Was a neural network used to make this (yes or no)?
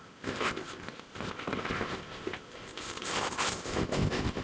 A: yes